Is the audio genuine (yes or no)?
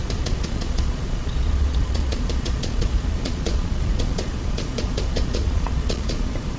no